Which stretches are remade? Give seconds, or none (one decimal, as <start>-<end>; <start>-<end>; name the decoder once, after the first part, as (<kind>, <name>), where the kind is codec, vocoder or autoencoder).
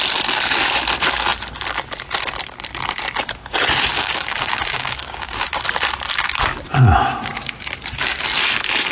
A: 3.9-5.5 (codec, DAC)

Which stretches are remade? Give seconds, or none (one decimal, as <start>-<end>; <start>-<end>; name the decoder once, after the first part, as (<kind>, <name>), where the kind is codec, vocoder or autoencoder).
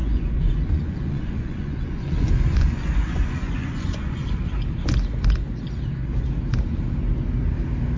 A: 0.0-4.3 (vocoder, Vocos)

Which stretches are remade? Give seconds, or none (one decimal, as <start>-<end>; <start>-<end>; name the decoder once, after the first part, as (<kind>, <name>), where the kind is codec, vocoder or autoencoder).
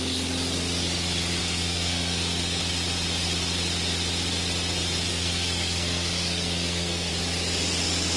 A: 1.4-2.6 (codec, SNAC); 5.1-7.1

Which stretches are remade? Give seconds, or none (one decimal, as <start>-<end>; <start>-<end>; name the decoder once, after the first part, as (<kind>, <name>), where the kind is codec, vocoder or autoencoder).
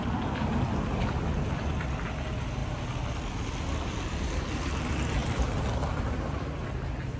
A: 2.6-3.3 (vocoder, BigVGAN v2); 5.2-6.0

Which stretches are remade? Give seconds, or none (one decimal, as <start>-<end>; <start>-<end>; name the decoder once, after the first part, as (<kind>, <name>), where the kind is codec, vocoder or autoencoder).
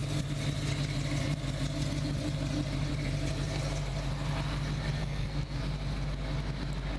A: 5.0-5.6 (codec, SNAC)